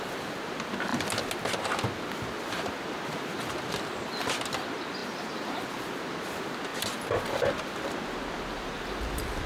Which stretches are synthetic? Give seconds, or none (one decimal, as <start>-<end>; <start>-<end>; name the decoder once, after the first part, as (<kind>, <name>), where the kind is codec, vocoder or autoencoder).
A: none